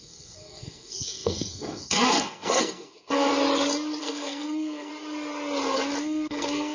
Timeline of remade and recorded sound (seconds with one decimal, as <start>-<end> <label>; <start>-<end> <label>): 0.0-3.3 remade; 3.3-4.0 recorded; 4.0-4.9 remade; 4.9-6.0 recorded; 6.0-6.7 remade